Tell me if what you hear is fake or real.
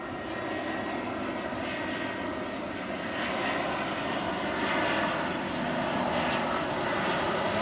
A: real